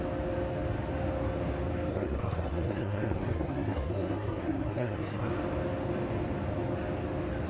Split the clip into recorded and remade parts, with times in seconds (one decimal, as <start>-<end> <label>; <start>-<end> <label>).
0.0-1.9 recorded; 1.9-5.3 remade; 5.3-7.5 recorded